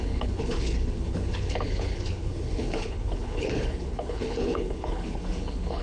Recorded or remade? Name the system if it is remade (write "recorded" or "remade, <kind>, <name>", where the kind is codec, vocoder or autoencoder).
remade, codec, HILCodec